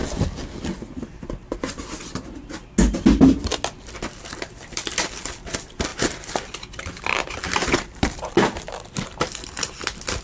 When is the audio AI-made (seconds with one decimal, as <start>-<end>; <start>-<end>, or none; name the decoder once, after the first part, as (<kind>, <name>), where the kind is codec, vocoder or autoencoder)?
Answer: 3.8-10.2 (vocoder, BigVGAN v2)